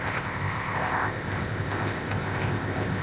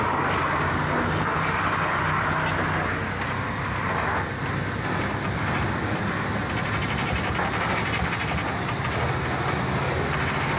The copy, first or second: first